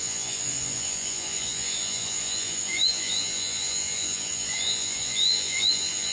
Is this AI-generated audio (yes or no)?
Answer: yes